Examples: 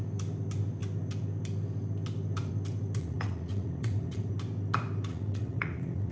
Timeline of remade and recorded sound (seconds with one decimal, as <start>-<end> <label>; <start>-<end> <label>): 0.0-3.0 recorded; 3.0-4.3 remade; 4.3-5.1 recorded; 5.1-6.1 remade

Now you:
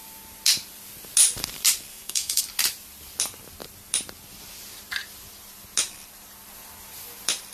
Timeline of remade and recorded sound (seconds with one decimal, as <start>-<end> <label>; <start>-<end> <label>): 0.0-1.9 recorded; 1.9-2.4 remade; 2.4-7.5 recorded

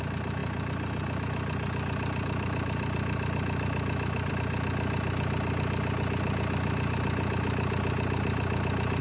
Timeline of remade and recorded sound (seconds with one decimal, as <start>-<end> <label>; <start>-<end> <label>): 0.0-9.0 recorded

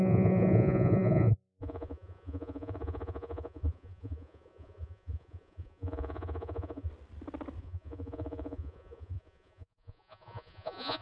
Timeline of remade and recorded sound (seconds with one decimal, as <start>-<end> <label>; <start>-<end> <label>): 0.0-6.9 remade; 6.9-7.6 recorded; 7.6-11.0 remade